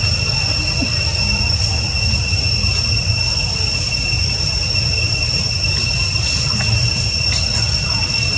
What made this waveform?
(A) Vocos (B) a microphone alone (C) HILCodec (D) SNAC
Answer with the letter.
B